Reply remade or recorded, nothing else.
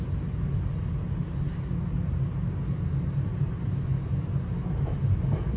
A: recorded